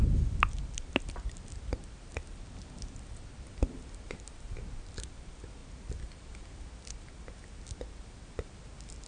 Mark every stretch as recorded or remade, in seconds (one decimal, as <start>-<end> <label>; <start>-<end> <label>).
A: 0.0-9.1 recorded